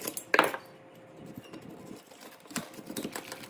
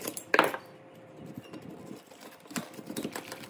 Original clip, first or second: first